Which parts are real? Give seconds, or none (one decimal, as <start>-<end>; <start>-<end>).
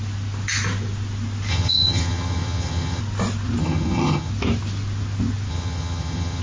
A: 0.0-1.5; 3.0-3.6; 4.3-5.5